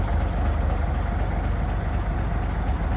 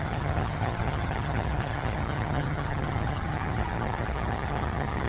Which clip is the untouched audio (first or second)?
first